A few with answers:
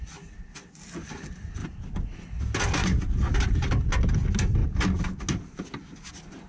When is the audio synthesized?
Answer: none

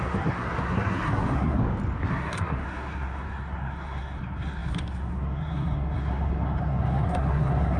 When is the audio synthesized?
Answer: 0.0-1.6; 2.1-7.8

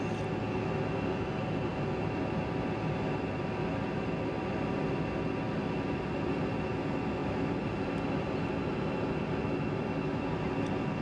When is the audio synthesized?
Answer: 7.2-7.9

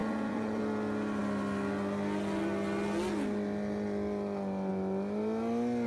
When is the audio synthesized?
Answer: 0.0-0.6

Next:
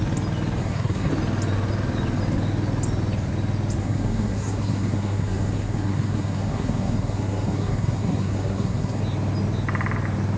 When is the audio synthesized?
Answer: 0.6-1.1; 3.8-9.0

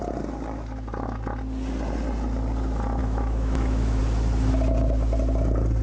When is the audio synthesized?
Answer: 3.0-4.0